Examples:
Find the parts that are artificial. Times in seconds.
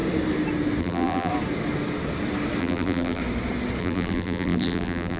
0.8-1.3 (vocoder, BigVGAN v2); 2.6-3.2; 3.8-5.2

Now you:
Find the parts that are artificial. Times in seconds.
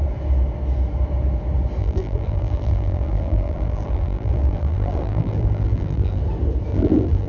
1.8-6.2 (vocoder, BigVGAN v2); 6.7-7.3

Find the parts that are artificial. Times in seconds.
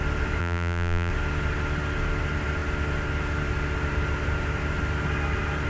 0.4-1.1 (vocoder, BigVGAN v2)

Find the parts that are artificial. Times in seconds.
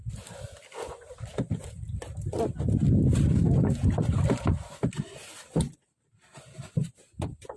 none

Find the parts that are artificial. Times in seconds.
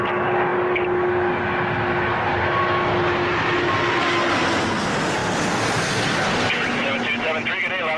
none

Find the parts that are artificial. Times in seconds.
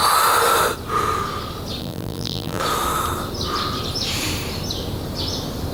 1.8-2.6 (vocoder, BigVGAN v2)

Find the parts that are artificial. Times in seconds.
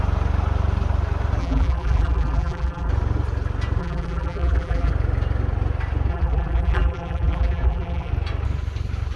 1.4-2.9 (vocoder, BigVGAN v2); 3.8-4.9; 6.1-8.1